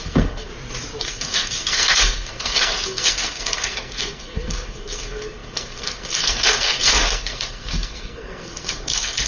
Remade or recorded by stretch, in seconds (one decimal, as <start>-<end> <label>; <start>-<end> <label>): 0.0-0.5 remade; 0.5-1.0 recorded; 1.0-9.3 remade